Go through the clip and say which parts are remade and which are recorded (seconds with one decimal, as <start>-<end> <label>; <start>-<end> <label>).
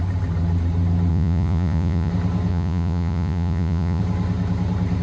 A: 0.0-1.1 recorded; 1.1-2.1 remade; 2.1-2.5 recorded; 2.5-4.0 remade; 4.0-5.0 recorded